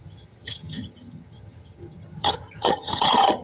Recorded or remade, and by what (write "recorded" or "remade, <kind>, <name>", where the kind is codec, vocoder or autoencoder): remade, vocoder, HiFi-GAN